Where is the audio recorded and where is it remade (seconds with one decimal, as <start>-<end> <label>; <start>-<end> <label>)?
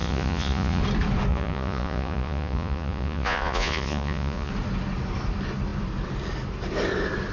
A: 0.0-0.8 remade; 0.8-1.3 recorded; 1.3-4.5 remade; 4.5-7.3 recorded